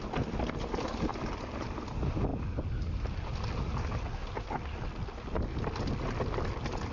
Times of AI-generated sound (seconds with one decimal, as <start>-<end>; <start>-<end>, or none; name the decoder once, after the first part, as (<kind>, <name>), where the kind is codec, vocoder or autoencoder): none